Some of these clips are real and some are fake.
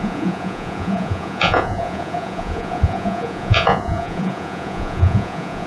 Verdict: fake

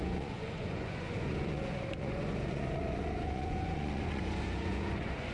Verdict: fake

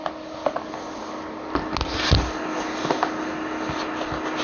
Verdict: real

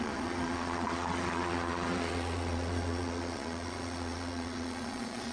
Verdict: fake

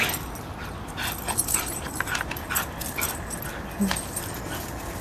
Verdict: real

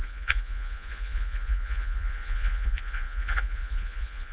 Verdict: fake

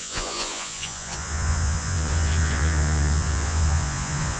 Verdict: fake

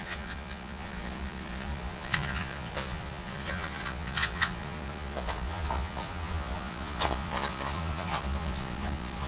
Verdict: fake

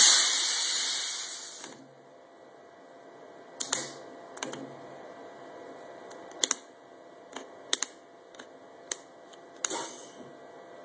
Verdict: real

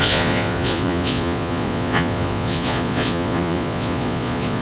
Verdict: fake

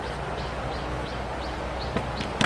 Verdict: real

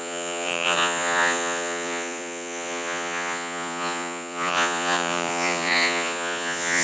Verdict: fake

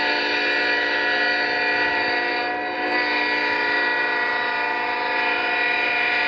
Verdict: real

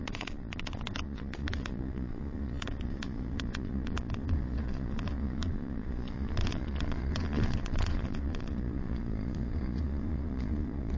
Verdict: fake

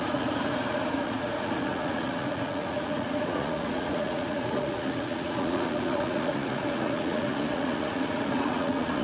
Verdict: fake